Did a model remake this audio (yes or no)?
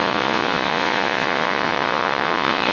yes